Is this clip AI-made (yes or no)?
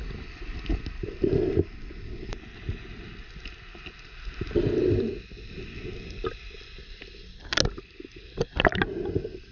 no